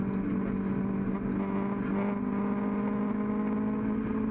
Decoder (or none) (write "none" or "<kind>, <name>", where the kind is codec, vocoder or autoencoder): none